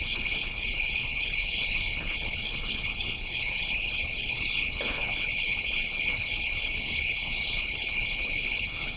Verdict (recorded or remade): remade